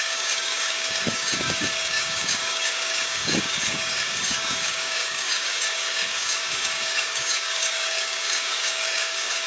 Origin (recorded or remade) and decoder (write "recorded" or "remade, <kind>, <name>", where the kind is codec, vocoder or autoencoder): remade, codec, DAC